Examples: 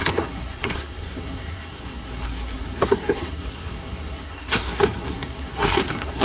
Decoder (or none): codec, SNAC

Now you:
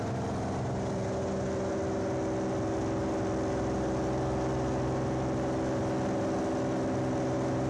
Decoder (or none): none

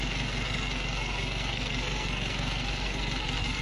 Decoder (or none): codec, SNAC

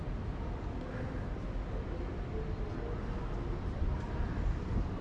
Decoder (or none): none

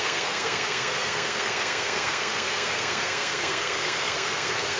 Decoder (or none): codec, SNAC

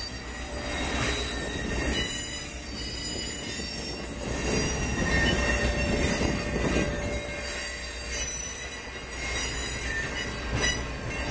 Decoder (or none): none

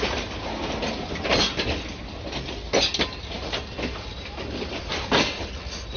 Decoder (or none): none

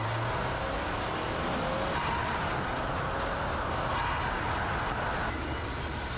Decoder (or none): none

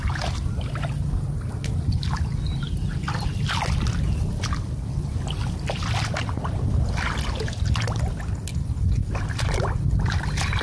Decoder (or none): none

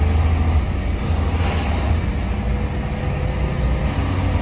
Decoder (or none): none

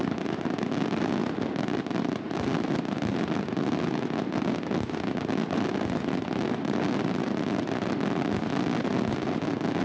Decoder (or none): none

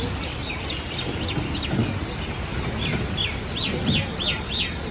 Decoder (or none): none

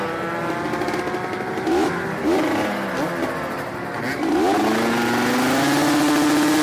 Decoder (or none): none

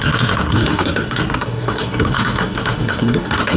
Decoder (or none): codec, SNAC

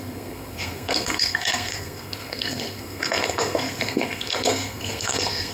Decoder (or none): codec, SNAC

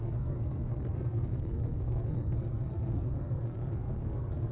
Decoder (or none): codec, SNAC